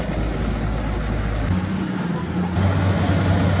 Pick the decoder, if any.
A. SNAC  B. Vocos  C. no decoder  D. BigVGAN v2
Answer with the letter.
C